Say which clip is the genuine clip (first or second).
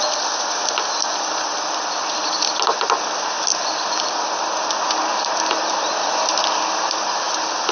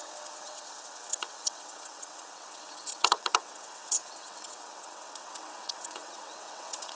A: first